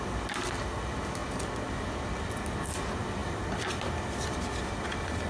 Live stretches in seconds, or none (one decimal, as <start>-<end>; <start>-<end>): 0.0-3.2